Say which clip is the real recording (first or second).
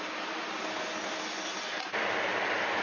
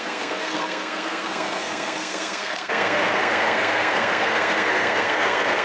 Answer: first